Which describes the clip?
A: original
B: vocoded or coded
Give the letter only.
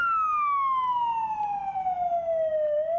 A